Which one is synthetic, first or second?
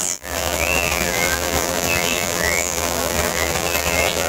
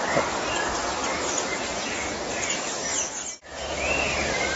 first